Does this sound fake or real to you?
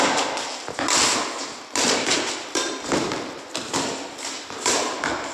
real